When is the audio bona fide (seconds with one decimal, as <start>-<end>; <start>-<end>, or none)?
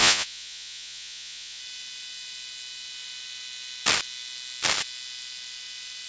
1.6-6.1